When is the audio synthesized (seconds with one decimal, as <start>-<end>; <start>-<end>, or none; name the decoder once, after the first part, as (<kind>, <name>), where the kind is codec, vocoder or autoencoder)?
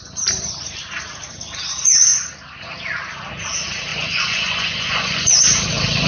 3.9-5.4 (vocoder, Vocos)